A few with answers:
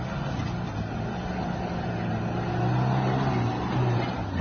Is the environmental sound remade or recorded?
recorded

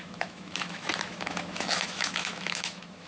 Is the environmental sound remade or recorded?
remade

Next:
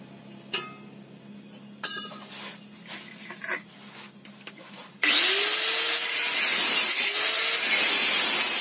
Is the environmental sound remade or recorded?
recorded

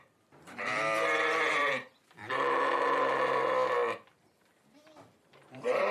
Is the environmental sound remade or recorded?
remade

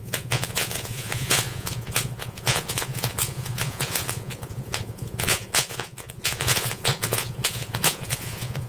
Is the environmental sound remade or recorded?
remade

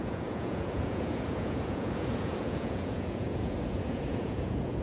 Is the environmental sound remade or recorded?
remade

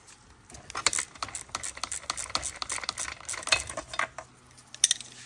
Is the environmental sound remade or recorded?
recorded